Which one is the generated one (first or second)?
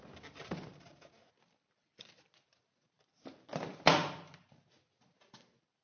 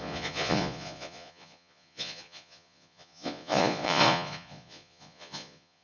second